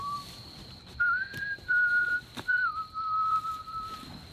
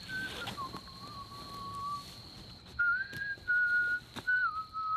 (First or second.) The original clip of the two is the second